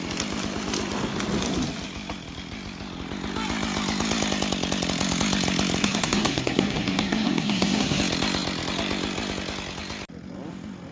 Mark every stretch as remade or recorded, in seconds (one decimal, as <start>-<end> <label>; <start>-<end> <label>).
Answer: 0.0-5.8 recorded; 5.8-8.0 remade; 8.0-10.9 recorded